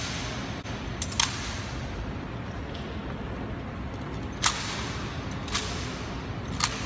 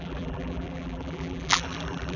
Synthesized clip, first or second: second